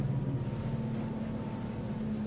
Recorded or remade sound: recorded